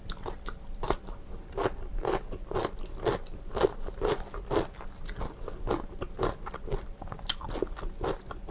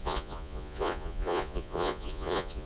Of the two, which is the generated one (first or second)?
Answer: second